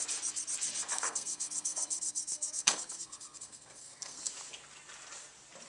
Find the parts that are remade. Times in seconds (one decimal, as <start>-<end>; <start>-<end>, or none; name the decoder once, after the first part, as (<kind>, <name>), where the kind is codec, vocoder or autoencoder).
0.9-4.3 (codec, SNAC)